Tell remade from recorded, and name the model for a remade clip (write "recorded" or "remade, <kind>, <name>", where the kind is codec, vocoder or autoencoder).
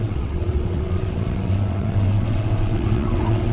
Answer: remade, vocoder, WaveNeXt